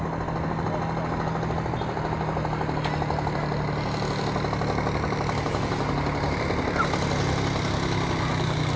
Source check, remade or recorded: recorded